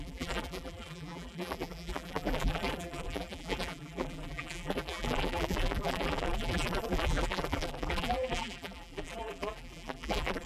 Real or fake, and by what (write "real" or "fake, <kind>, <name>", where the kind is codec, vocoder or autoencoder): fake, vocoder, BigVGAN v2